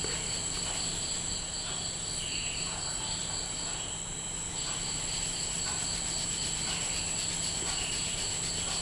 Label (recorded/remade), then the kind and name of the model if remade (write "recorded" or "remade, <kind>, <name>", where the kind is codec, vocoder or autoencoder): recorded